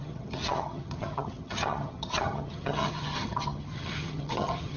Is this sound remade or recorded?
remade